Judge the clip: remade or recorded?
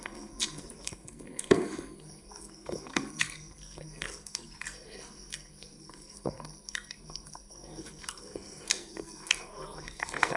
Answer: remade